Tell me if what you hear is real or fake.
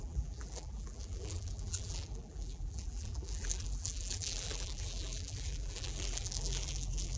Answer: fake